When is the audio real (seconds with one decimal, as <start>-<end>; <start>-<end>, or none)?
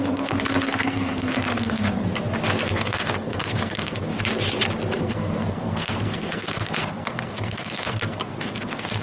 2.0-2.6; 4.1-5.0